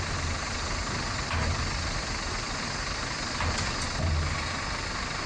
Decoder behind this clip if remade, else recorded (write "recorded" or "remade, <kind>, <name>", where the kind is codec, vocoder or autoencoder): recorded